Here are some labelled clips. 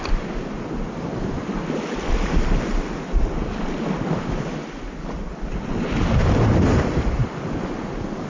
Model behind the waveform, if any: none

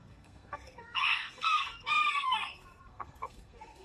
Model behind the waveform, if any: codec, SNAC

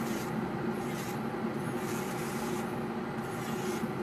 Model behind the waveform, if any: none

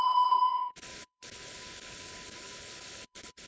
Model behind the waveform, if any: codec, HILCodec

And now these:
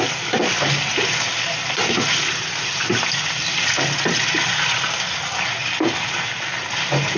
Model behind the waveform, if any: none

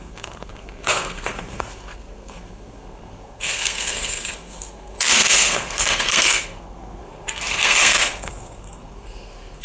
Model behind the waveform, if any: codec, SNAC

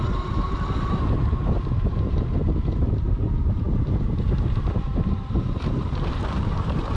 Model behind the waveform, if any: vocoder, BigVGAN v2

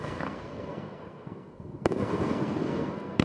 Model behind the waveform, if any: codec, SNAC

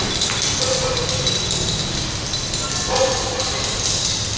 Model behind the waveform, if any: none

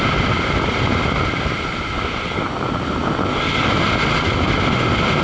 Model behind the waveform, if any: none